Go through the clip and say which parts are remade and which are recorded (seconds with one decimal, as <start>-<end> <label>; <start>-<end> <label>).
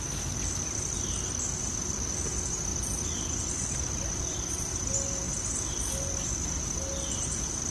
0.0-7.7 recorded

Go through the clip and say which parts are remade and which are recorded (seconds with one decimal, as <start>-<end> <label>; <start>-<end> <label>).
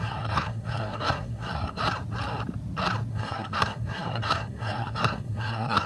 0.0-1.8 remade; 1.8-3.1 recorded; 3.1-5.9 remade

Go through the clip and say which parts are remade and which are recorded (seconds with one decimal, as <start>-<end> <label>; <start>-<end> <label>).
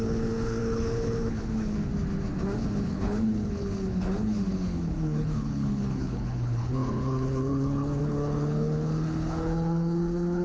0.0-1.9 remade; 1.9-2.6 recorded; 2.6-10.4 remade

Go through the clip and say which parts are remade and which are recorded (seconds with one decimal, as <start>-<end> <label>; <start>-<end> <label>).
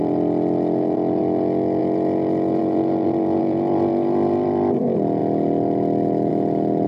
0.0-1.2 remade; 1.2-1.8 recorded; 1.8-5.2 remade; 5.2-6.3 recorded; 6.3-6.9 remade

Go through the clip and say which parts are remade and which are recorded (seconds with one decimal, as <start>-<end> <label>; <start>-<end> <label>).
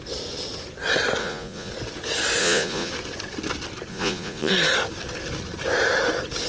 0.0-1.2 recorded; 1.2-1.7 remade; 1.7-2.4 recorded; 2.4-2.9 remade; 2.9-3.9 recorded; 3.9-4.5 remade; 4.5-6.5 recorded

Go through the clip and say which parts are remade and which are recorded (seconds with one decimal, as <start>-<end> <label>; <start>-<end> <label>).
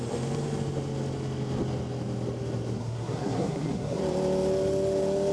0.0-2.8 recorded; 2.8-4.0 remade; 4.0-5.3 recorded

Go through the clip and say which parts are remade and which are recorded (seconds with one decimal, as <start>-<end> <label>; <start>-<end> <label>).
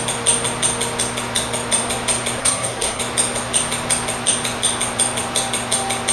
0.0-2.4 recorded; 2.4-3.0 remade; 3.0-6.1 recorded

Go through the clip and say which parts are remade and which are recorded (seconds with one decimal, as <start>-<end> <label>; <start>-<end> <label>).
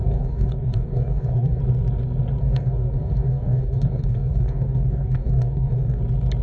0.0-1.6 remade; 1.6-2.4 recorded; 2.4-6.0 remade; 6.0-6.4 recorded